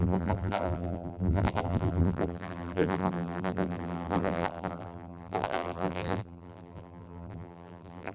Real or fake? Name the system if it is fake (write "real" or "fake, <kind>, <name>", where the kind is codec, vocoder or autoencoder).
fake, vocoder, BigVGAN v2